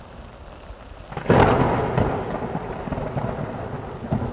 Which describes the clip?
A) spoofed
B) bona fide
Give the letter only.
B